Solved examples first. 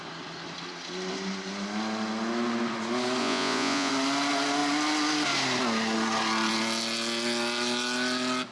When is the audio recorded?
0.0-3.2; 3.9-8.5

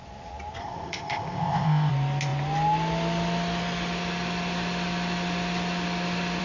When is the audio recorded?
0.0-0.6; 1.9-6.4